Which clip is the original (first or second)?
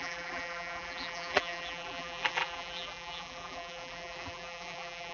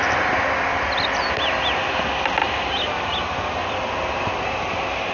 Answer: second